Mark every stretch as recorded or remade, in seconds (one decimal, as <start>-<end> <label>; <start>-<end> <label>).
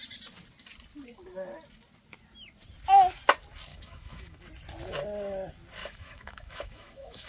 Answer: 0.0-3.7 recorded; 3.7-4.4 remade; 4.4-5.8 recorded; 5.8-7.3 remade